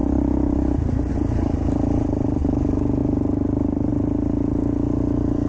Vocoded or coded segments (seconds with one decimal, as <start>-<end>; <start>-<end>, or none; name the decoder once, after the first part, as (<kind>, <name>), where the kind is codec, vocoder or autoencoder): none